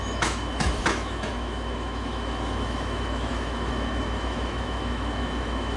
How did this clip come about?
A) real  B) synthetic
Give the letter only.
B